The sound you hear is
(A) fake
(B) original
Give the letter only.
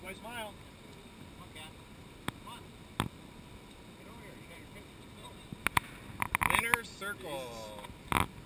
B